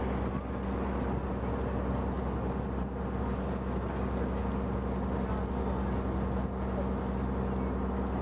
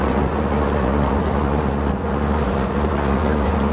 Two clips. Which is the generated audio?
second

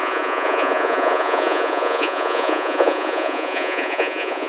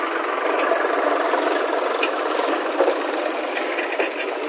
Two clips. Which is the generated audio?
first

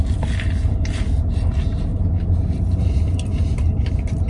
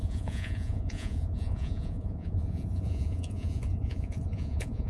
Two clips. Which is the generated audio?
second